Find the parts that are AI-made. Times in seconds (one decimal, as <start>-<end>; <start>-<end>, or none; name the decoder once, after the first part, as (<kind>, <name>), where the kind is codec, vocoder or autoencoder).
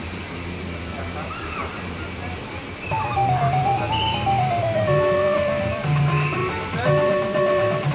0.6-7.9 (vocoder, BigVGAN v2)